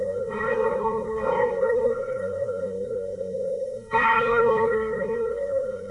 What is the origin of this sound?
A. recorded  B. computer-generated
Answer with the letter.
B